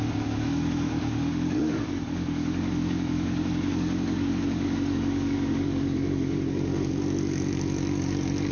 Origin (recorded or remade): remade